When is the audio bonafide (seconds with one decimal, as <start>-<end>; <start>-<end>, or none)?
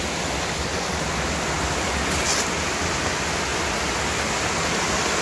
0.0-5.2